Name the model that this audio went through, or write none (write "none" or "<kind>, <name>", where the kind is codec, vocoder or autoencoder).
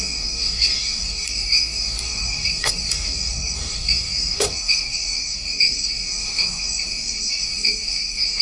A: codec, DAC